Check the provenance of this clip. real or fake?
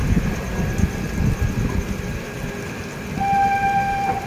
real